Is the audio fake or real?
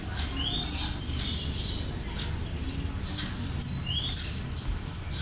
real